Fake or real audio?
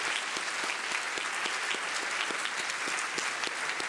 real